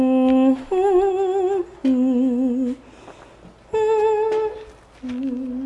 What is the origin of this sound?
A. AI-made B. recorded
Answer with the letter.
B